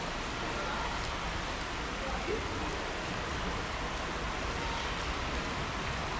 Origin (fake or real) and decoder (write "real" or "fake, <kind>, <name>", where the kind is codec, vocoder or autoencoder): real